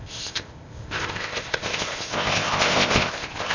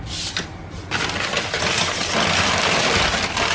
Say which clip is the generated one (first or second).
first